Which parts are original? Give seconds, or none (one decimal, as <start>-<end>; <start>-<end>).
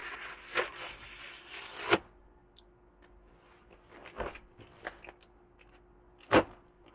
0.0-6.9